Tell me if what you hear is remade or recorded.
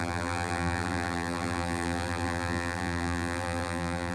remade